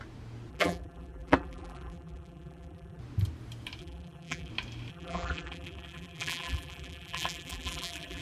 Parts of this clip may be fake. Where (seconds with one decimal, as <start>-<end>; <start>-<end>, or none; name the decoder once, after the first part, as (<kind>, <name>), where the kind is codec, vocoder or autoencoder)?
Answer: 0.5-3.0 (vocoder, BigVGAN v2); 3.8-4.5; 4.9-8.2